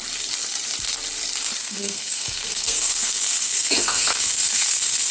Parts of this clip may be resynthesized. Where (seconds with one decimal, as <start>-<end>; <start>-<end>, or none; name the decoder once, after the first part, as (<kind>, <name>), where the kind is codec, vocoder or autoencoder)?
1.6-5.1 (codec, SNAC)